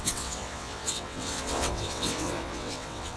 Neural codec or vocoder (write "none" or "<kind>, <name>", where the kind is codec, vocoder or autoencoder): vocoder, WaveNeXt